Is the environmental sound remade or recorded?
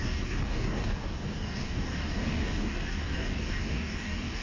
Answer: remade